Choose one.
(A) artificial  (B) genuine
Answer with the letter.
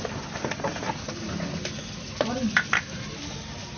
B